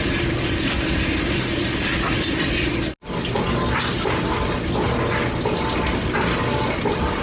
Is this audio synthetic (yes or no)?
no